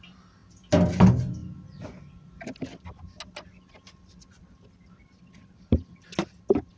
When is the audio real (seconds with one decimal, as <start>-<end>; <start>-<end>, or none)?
0.0-6.8

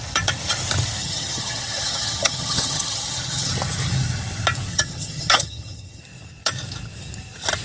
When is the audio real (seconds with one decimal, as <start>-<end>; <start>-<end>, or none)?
0.0-1.0; 3.5-4.7; 6.0-7.6

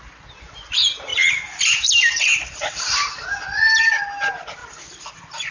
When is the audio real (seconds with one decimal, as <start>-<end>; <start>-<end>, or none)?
0.0-4.6

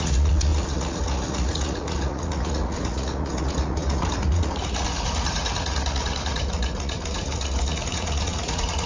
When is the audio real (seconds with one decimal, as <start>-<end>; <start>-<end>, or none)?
none

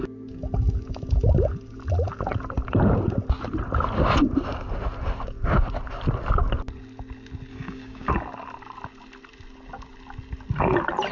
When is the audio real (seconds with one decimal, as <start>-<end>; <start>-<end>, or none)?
0.0-7.5; 8.1-11.1

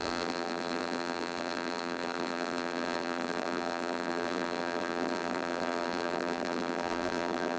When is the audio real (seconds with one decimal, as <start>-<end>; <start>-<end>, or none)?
none

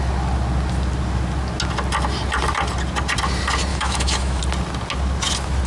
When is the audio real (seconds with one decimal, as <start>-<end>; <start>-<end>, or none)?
0.0-3.7; 4.4-5.7

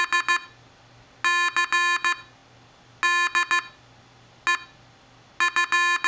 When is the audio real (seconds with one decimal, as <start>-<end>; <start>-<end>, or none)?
0.0-6.1